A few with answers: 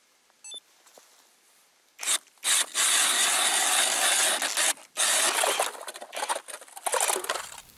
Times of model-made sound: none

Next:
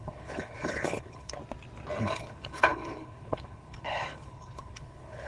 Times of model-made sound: 0.0-1.4 (codec, HILCodec); 2.0-5.3

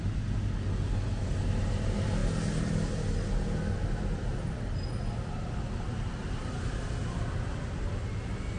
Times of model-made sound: none

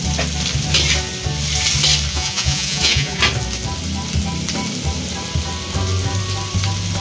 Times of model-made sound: 2.1-3.2 (vocoder, Vocos)

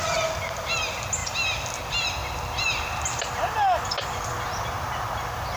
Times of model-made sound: none

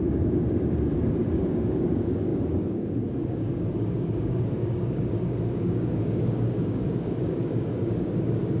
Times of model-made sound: 0.0-8.6 (codec, DAC)

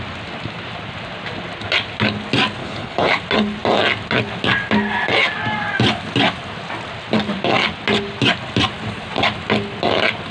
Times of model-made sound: 2.6-3.2 (codec, HILCodec)